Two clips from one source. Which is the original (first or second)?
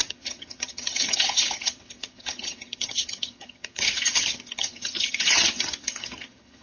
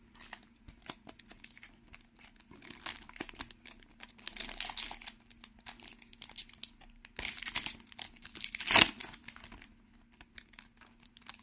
second